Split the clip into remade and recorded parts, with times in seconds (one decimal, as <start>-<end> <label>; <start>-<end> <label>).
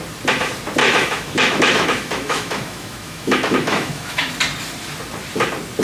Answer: 0.0-0.8 recorded; 0.8-4.3 remade; 4.3-5.8 recorded